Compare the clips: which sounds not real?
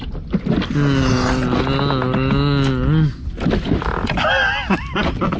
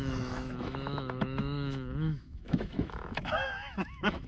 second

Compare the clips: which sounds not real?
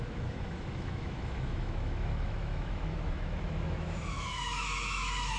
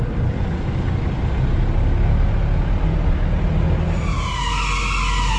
first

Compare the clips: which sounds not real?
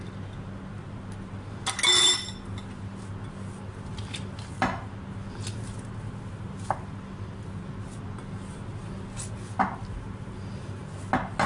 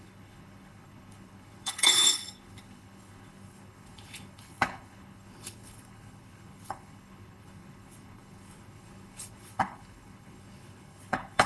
second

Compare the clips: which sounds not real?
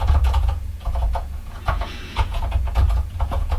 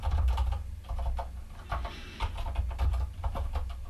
first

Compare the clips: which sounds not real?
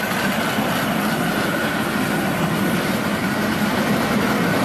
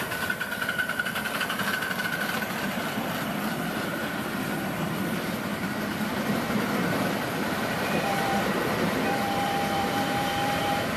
second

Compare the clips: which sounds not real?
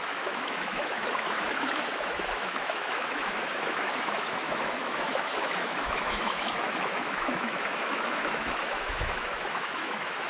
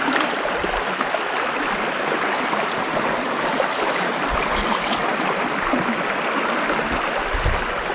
first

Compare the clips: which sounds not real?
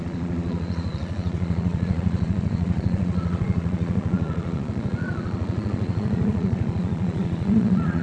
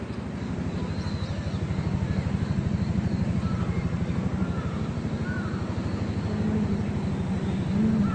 first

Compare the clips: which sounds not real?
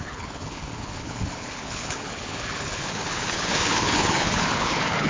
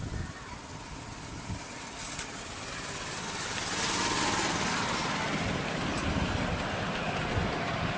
first